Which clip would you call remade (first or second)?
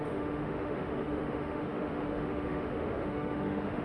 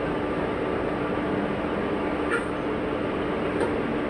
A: first